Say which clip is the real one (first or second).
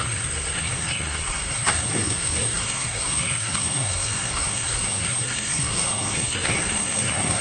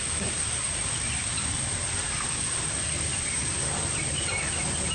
second